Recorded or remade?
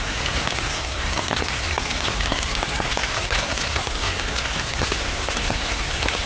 remade